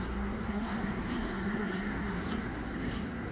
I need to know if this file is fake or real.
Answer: fake